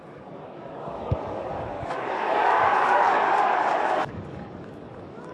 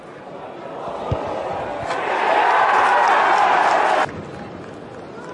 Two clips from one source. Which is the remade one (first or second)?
first